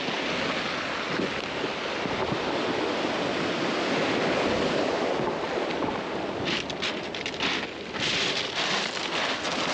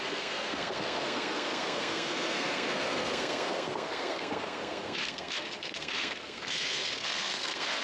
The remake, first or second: second